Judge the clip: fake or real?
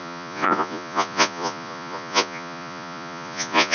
fake